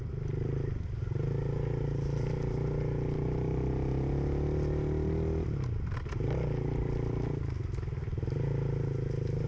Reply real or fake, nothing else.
real